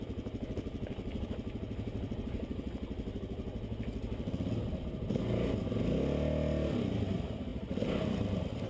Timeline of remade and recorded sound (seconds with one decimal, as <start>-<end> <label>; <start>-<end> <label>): 0.0-7.5 recorded; 7.5-8.7 remade